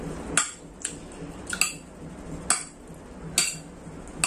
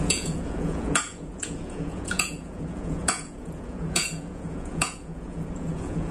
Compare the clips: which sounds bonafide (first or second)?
first